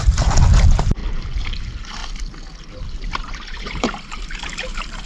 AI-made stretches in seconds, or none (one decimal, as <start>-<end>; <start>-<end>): 0.0-1.0; 1.6-2.0; 2.8-5.1